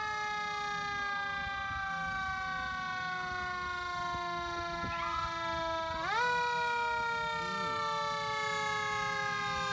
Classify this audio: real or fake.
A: real